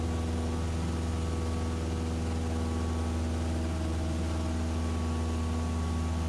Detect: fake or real real